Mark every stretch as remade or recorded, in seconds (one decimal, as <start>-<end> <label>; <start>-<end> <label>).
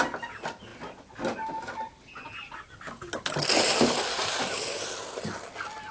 0.0-5.9 recorded